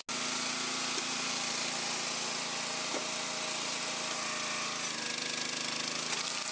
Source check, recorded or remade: recorded